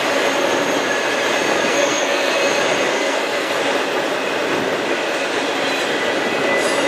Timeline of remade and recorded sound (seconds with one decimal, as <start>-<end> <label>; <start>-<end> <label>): 0.0-1.5 recorded; 1.5-2.3 remade; 2.3-2.9 recorded; 2.9-3.5 remade; 3.5-6.9 recorded